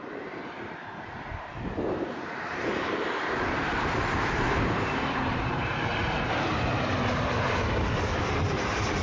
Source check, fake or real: fake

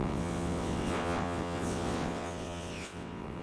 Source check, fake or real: fake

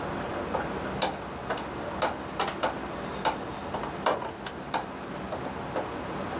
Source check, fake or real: real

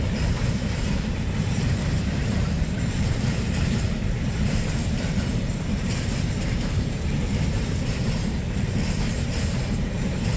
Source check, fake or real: fake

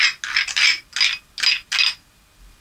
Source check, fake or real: real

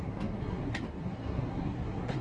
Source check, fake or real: fake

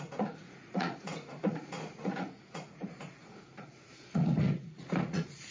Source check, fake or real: fake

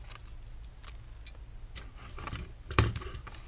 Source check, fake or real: real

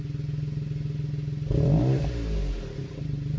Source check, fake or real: real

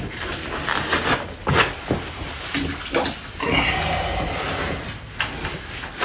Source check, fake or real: real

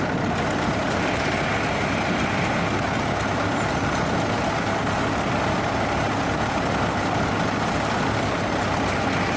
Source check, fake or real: real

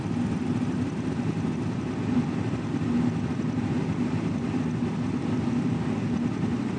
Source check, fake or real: real